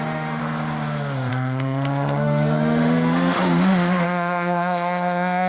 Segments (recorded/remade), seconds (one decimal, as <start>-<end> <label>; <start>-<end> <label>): 0.0-0.4 remade; 0.4-1.3 recorded; 1.3-5.5 remade